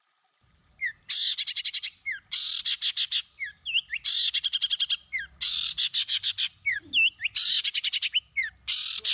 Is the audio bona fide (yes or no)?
yes